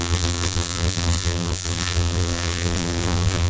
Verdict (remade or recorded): remade